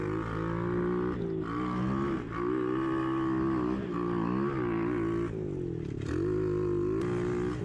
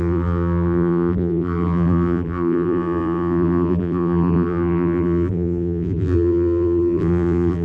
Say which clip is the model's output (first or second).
second